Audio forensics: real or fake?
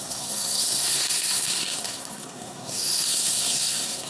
fake